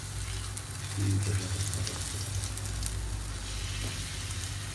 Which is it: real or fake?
real